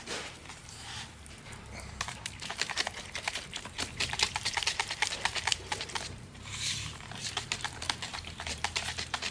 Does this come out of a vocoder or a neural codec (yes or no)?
yes